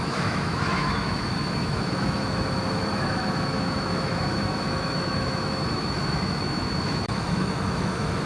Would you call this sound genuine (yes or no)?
no